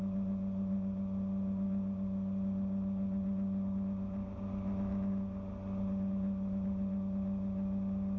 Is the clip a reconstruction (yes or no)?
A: no